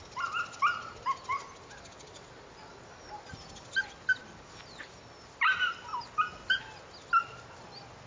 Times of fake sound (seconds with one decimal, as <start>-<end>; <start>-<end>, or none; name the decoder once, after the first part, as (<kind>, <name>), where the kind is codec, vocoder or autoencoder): none